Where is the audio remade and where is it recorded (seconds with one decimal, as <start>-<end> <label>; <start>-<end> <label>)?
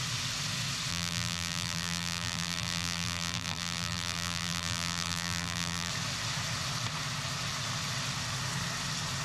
0.0-0.9 recorded; 0.9-5.9 remade; 5.9-9.2 recorded